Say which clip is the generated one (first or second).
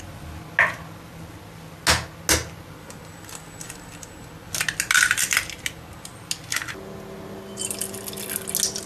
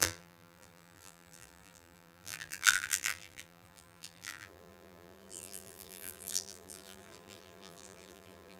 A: second